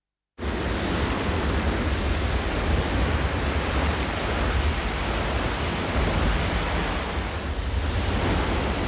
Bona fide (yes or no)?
yes